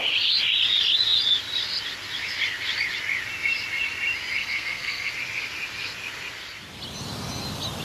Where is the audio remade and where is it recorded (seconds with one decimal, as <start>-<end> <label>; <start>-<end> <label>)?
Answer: 0.0-4.4 recorded; 4.4-5.1 remade; 5.1-7.8 recorded

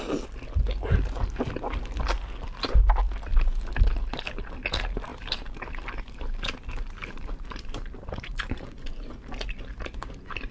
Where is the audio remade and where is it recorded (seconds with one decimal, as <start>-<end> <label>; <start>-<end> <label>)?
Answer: 0.0-5.1 recorded; 5.1-5.7 remade; 5.7-7.0 recorded; 7.0-9.0 remade; 9.0-10.5 recorded